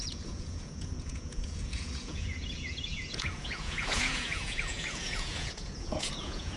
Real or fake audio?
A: fake